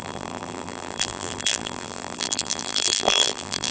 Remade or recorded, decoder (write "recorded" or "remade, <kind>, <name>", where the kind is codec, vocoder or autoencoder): remade, vocoder, BigVGAN v2